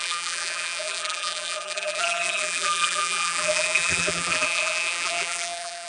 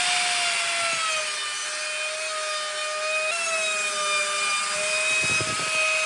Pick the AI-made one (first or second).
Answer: first